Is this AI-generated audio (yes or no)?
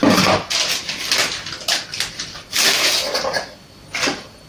no